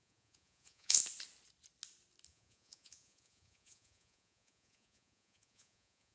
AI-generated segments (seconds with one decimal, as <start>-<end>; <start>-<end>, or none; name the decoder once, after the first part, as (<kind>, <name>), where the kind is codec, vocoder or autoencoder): 0.0-1.0 (vocoder, Vocos); 2.3-6.1